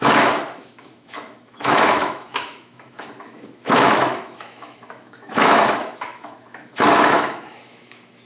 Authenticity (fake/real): fake